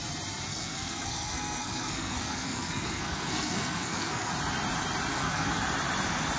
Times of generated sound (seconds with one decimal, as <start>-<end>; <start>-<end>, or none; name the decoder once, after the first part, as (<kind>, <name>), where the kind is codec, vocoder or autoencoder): 0.5-4.3 (codec, SNAC); 5.1-5.6